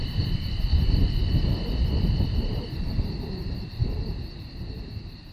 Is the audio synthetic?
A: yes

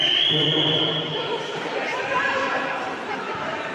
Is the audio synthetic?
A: yes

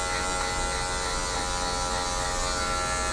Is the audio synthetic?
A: no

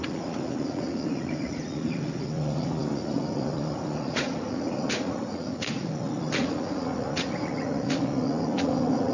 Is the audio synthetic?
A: yes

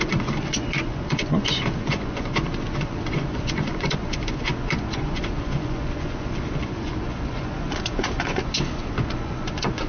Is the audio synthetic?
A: yes